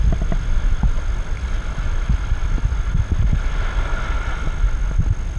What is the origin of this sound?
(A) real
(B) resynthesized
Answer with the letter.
A